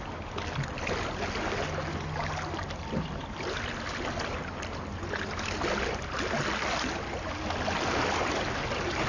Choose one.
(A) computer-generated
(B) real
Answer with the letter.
B